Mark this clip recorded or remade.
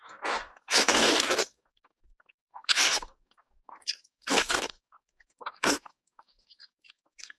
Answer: remade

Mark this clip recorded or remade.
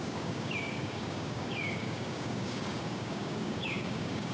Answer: remade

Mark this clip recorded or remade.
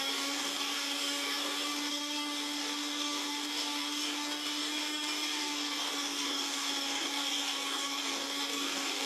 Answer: remade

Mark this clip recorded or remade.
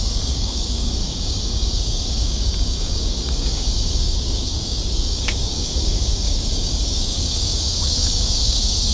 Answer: remade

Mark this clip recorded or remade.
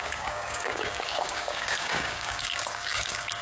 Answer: remade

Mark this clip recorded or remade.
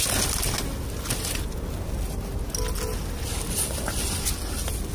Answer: recorded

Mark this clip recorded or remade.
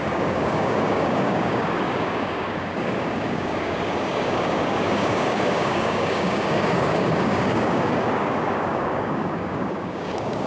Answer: remade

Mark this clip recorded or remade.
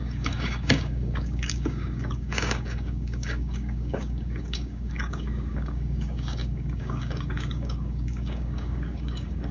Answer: remade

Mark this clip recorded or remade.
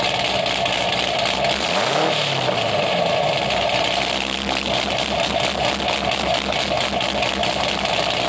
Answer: recorded